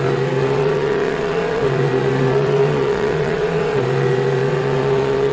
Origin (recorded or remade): remade